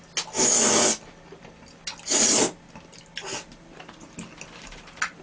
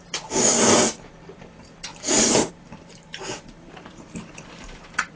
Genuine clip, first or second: first